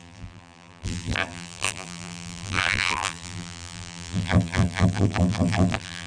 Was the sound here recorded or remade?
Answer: remade